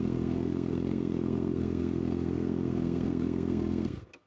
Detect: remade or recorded remade